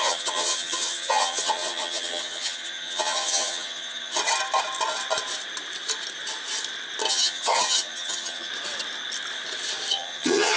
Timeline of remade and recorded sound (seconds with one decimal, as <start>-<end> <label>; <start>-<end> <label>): 0.0-4.2 remade; 4.2-7.1 recorded; 7.1-8.5 remade; 8.5-9.9 recorded; 9.9-10.6 remade